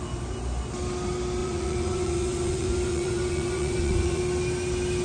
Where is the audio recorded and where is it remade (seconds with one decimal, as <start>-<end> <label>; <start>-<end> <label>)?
0.0-1.4 recorded; 1.4-4.2 remade; 4.2-5.0 recorded